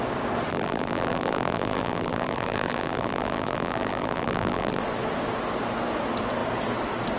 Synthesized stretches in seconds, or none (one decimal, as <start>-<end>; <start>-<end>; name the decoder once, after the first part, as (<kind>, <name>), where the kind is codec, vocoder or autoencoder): 0.5-4.8 (vocoder, BigVGAN v2)